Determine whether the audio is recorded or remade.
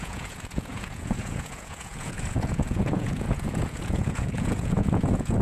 remade